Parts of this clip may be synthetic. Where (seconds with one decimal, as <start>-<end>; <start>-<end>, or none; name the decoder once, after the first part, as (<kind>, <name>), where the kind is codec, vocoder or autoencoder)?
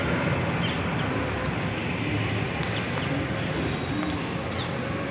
none